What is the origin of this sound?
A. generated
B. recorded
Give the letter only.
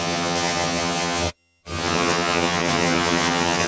A